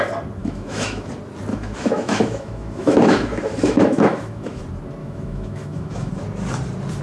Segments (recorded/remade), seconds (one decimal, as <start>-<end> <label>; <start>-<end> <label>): 0.0-0.4 recorded; 0.4-1.1 remade; 1.1-1.5 recorded; 1.5-4.6 remade; 4.6-5.0 recorded; 5.0-6.1 remade; 6.1-7.0 recorded